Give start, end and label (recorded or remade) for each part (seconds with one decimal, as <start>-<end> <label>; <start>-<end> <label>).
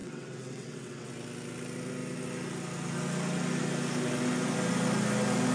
0.0-1.1 remade; 1.1-5.5 recorded